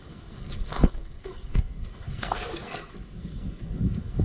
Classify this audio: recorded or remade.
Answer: remade